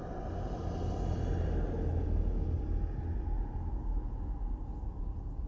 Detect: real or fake real